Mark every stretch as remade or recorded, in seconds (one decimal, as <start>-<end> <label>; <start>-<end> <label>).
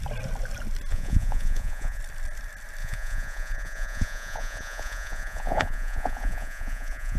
0.0-0.9 recorded; 0.9-2.0 remade; 2.0-2.8 recorded; 2.8-7.2 remade